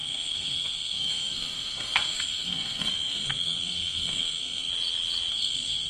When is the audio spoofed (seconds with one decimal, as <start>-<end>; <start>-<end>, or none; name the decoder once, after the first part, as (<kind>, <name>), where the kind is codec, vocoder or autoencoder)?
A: 0.0-4.7 (codec, SNAC); 5.3-5.9